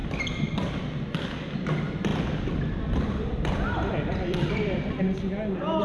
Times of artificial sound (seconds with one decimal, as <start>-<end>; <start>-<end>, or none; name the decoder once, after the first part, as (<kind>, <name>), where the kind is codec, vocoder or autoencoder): 2.1-5.0 (vocoder, BigVGAN v2)